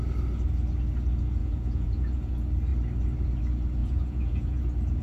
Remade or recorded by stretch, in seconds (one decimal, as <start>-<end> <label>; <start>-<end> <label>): 0.0-1.4 recorded; 1.4-2.3 remade; 2.3-3.8 recorded; 3.8-4.6 remade; 4.6-5.0 recorded